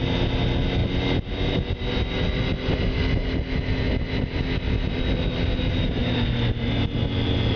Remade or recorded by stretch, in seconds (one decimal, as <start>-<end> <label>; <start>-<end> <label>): 0.0-7.6 recorded